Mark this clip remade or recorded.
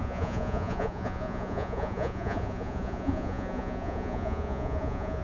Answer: remade